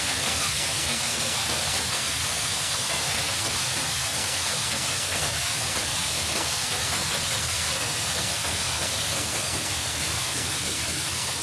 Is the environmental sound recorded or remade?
remade